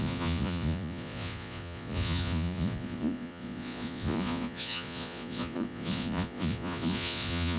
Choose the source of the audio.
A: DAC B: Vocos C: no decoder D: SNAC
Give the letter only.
B